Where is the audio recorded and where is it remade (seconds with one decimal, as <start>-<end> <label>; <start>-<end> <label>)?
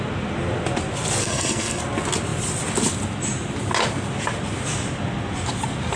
0.0-1.2 recorded; 1.2-1.8 remade; 1.8-6.0 recorded